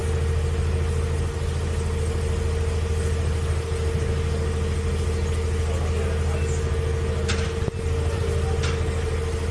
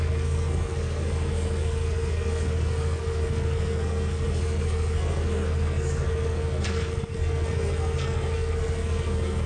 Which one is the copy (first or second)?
second